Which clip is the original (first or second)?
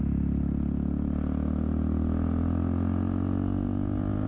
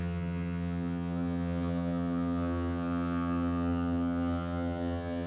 first